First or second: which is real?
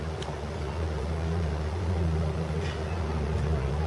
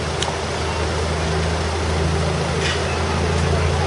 second